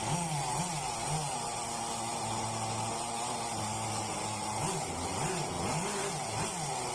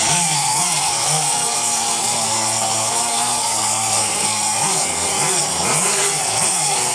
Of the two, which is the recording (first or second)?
first